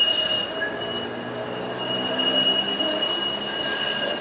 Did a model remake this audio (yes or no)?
no